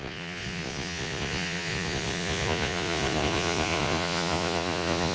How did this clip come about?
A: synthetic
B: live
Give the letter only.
A